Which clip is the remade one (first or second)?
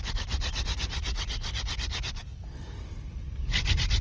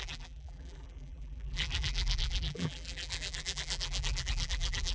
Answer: second